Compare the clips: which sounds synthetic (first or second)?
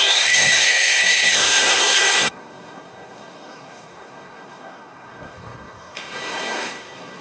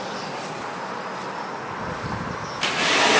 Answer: first